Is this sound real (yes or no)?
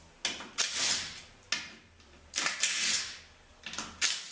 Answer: yes